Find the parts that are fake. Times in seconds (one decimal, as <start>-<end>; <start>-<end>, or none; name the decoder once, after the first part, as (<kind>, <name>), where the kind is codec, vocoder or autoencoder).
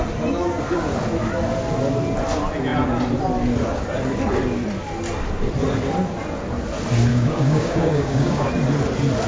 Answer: 7.1-8.5 (codec, DAC)